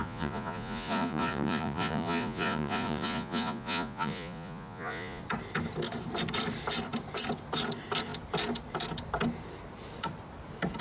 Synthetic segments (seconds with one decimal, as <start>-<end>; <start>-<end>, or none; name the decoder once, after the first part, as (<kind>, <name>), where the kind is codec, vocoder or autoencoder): 0.0-5.2 (vocoder, Vocos)